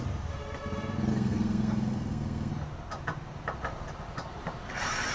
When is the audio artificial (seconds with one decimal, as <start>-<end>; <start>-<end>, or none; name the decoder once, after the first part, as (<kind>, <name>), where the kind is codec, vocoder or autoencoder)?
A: 1.1-2.5 (codec, SNAC)

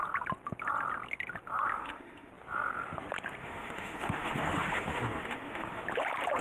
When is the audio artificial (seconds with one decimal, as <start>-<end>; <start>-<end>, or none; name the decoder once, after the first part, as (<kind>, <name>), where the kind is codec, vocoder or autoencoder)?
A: 1.7-2.3 (autoencoder, DAC-VAE); 3.4-5.8